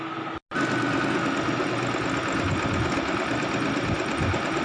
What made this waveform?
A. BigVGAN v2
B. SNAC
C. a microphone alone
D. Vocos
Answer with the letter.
C